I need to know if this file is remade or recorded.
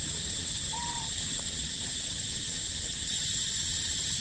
remade